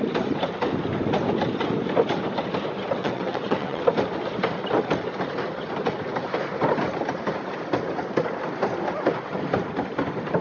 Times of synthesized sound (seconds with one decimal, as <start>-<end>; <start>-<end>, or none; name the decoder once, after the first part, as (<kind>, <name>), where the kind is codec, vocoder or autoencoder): 3.0-3.8 (vocoder, WaveNeXt)